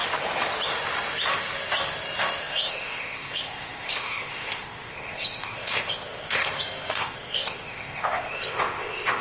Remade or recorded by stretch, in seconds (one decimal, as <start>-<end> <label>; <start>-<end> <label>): 0.0-2.4 recorded; 2.4-6.4 remade; 6.4-6.9 recorded; 6.9-9.2 remade